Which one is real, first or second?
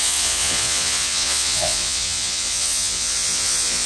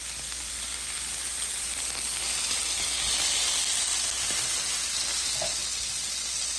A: second